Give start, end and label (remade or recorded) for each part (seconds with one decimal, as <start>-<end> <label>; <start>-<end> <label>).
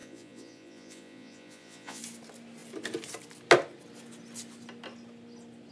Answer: 0.0-2.0 remade; 2.0-5.7 recorded